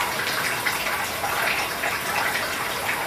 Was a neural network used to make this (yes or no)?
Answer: no